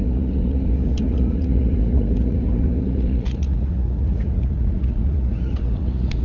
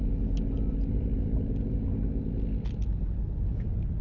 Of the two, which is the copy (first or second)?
first